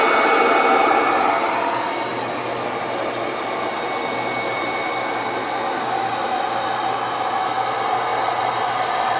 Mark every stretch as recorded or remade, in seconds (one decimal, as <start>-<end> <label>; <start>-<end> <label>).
0.0-9.2 recorded